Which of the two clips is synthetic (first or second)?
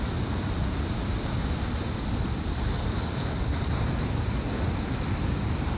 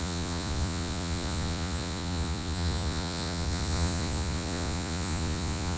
second